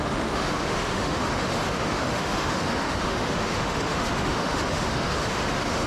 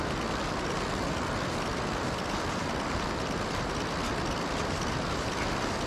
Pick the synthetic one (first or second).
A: first